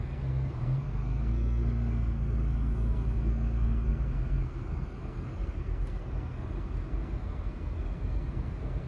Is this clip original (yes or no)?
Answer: no